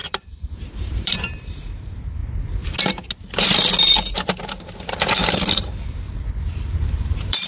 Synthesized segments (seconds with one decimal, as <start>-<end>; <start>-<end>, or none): 0.0-2.2; 6.7-7.5